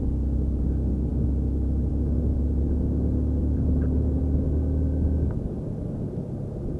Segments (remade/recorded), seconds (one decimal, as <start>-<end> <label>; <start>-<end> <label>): 0.0-1.1 recorded; 1.1-1.9 remade; 1.9-3.4 recorded; 3.4-4.2 remade; 4.2-6.8 recorded

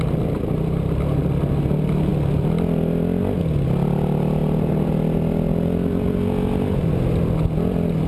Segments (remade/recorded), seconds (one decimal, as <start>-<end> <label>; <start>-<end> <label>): 0.0-8.1 recorded